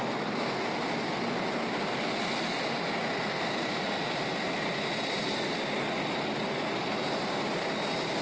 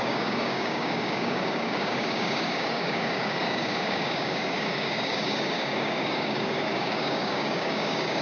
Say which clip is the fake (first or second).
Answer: second